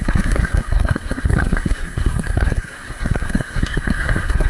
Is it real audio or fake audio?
fake